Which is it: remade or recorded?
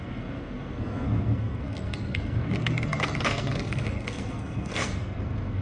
remade